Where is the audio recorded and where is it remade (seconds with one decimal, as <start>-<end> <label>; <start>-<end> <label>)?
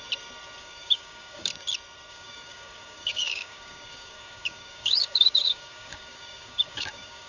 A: 0.0-0.6 recorded; 0.6-1.5 remade; 1.5-2.1 recorded; 2.1-7.3 remade